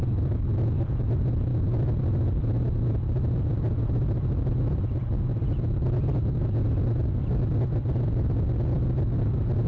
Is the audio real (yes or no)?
yes